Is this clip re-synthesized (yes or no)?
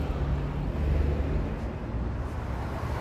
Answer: no